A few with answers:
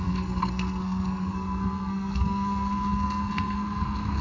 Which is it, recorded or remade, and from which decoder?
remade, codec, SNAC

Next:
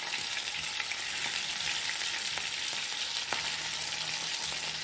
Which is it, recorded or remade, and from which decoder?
recorded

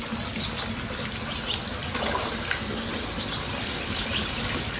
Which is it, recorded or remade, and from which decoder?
recorded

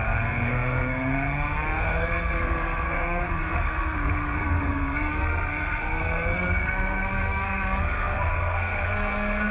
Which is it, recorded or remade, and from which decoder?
remade, codec, SNAC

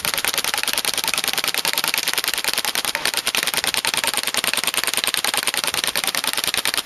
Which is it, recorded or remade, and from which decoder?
recorded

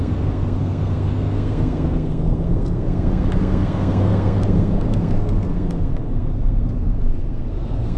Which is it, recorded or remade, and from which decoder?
remade, codec, SNAC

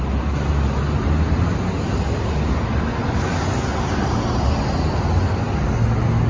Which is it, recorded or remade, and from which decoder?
recorded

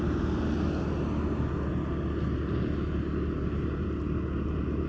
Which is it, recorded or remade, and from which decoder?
recorded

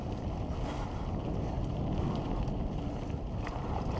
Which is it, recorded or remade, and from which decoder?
recorded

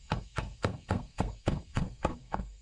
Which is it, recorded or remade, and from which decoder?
remade, codec, SNAC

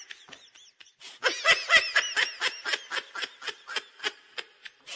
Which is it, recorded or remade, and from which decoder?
recorded